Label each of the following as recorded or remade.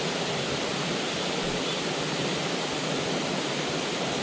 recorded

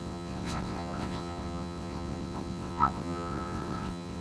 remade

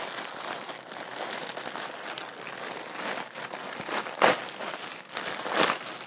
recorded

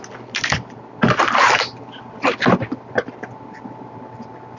recorded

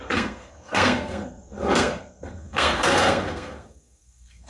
remade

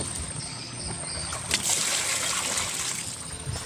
recorded